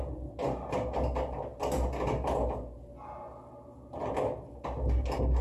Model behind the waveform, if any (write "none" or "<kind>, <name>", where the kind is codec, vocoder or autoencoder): none